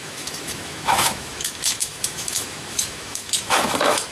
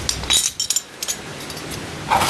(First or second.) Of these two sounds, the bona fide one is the second